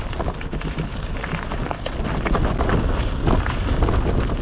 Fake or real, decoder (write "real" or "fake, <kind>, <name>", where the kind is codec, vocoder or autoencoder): real